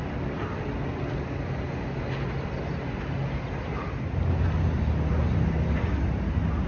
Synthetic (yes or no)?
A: no